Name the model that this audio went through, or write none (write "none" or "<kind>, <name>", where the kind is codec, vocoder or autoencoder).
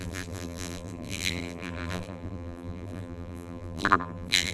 vocoder, BigVGAN v2